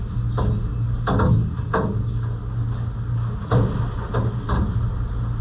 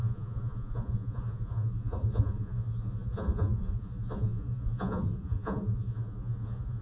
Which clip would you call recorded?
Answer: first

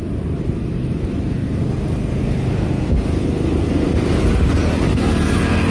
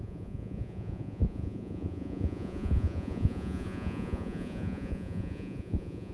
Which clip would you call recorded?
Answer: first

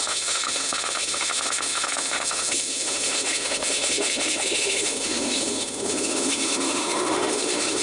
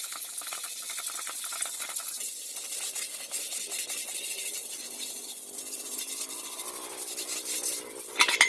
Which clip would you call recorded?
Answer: second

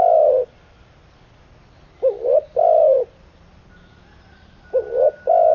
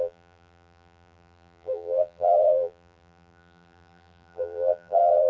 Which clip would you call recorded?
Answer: first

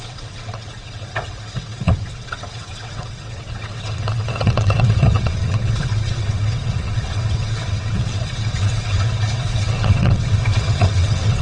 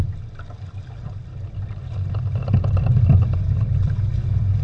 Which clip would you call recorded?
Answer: second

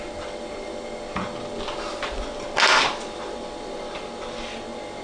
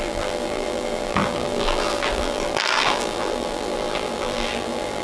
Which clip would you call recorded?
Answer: first